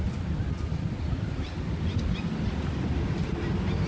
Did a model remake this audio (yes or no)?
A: no